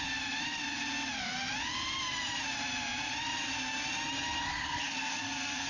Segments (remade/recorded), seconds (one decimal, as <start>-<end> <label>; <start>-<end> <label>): 0.0-4.5 recorded; 4.5-5.7 remade